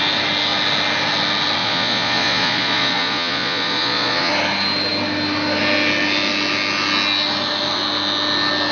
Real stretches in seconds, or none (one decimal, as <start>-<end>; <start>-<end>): 0.0-1.6; 4.3-8.7

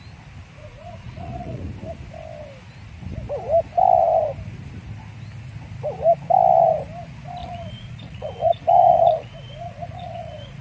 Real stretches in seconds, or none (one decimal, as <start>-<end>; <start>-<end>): 0.0-0.6; 1.6-7.4

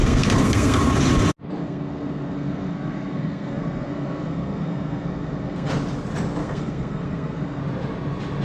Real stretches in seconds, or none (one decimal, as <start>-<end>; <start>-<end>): 0.8-1.6; 5.7-6.4; 7.6-8.4

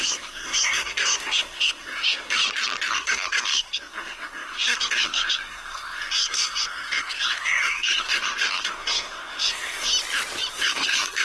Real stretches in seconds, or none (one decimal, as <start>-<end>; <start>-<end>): 2.4-2.9; 9.9-10.5

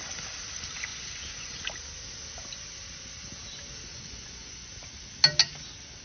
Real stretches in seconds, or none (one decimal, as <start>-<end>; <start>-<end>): 0.0-0.9; 1.6-3.9; 4.7-6.0

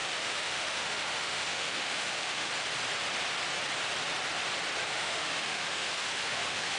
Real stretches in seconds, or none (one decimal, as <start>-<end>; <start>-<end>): 2.5-4.9